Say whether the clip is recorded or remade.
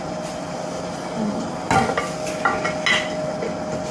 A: recorded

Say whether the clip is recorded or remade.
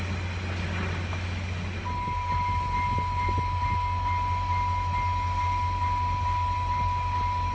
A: recorded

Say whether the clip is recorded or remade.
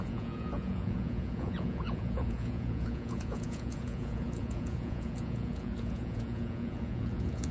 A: remade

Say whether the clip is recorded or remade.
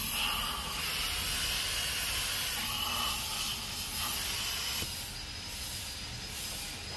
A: recorded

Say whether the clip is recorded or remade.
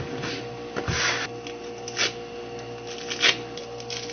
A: recorded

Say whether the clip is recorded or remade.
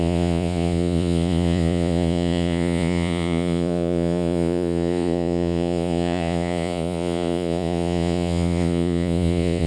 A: remade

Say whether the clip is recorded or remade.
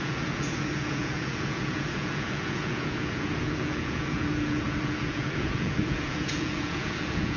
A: remade